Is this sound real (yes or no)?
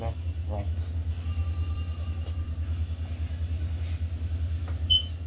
yes